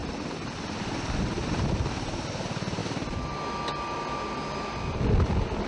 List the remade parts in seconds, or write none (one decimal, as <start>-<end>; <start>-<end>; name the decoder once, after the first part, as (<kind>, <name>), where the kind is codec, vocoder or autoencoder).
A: none